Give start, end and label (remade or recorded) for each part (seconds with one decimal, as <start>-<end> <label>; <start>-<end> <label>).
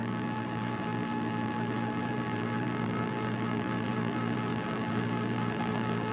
0.0-6.1 remade